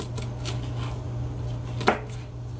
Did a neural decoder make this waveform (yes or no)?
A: no